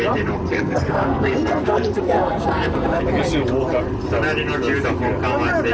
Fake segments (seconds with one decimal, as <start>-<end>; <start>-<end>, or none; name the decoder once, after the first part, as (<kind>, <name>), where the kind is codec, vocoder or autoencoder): 0.5-3.0 (codec, SNAC)